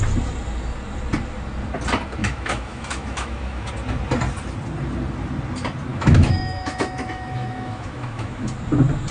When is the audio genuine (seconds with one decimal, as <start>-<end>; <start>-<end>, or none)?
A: 0.0-2.2; 3.7-5.9; 8.5-9.1